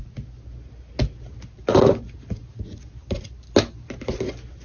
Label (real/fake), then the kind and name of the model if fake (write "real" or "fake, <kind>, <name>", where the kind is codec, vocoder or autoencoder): real